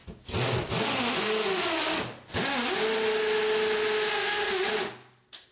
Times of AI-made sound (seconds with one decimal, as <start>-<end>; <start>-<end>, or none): none